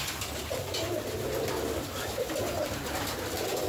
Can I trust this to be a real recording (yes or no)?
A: yes